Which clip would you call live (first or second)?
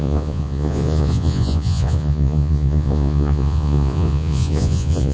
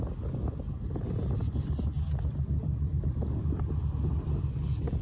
second